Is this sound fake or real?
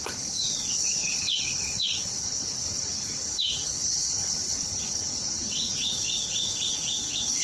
fake